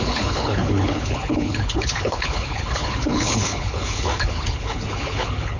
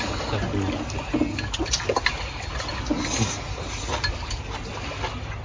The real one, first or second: second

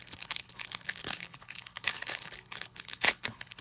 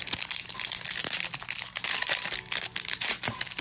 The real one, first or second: second